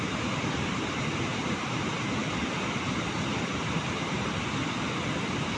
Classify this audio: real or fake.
fake